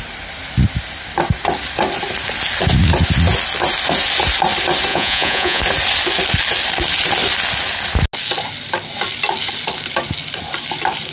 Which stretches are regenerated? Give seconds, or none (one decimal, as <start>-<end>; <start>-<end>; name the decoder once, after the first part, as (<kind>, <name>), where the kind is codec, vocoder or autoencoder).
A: 4.9-5.6 (vocoder, Vocos)